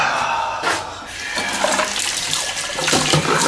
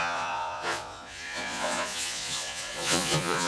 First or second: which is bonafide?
first